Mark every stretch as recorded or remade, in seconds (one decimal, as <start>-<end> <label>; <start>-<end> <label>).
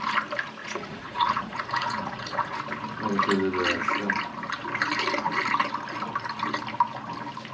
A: 0.0-0.6 recorded; 0.6-2.6 remade; 2.6-7.5 recorded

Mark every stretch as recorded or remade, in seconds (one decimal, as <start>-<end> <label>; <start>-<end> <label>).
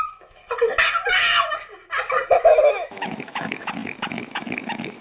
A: 0.0-0.4 remade; 0.4-2.4 recorded; 2.4-5.0 remade